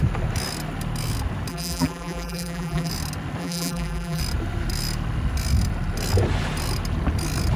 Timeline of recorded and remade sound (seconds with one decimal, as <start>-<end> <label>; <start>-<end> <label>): 0.0-1.5 recorded; 1.5-2.9 remade; 2.9-3.4 recorded; 3.4-4.2 remade; 4.2-7.6 recorded